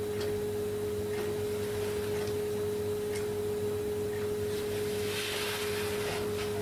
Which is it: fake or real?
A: real